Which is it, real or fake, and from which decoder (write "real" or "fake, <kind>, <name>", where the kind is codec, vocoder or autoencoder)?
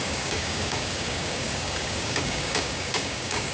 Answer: fake, codec, DAC